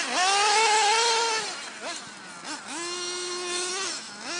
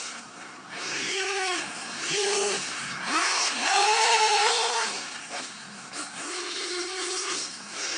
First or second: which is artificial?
second